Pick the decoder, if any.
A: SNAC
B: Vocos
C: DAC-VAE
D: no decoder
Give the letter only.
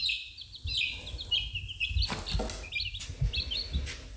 D